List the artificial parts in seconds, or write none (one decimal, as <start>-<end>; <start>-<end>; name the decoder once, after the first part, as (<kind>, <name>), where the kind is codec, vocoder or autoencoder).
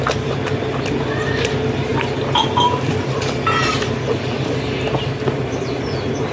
none